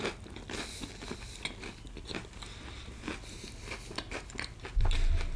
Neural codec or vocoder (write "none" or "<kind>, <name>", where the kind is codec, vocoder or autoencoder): none